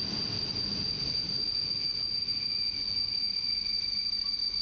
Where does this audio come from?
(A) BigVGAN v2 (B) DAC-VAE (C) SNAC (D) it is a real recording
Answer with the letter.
D